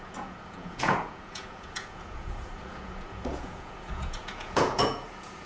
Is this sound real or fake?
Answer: fake